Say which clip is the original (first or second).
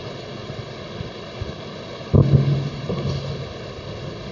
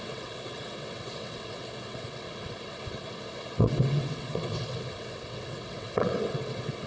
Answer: first